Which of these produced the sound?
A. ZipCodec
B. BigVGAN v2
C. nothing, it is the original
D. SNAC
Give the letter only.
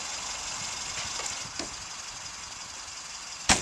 C